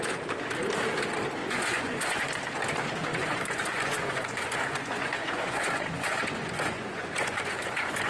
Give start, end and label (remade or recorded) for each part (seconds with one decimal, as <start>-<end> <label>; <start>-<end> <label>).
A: 0.0-1.4 recorded; 1.4-2.3 remade; 2.3-3.1 recorded; 3.1-8.1 remade